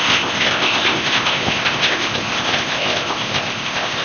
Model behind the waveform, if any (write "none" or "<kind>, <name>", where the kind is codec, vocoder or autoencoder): codec, ZipCodec